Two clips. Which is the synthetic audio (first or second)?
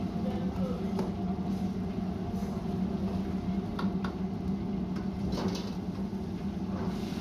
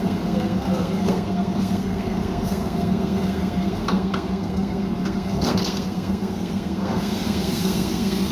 second